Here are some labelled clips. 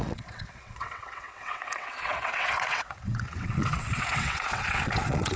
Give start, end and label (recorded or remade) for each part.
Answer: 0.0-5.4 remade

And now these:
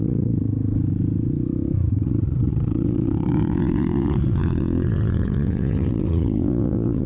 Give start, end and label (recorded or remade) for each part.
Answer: 0.0-0.5 remade; 0.5-1.9 recorded; 1.9-7.1 remade